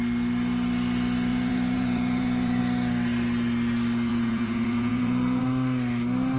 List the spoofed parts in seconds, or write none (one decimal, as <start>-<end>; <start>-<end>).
1.3-2.6; 4.1-5.4